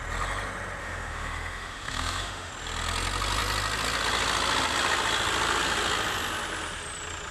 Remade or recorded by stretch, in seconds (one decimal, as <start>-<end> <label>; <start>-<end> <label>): 0.0-0.8 recorded; 0.8-2.5 remade; 2.5-7.3 recorded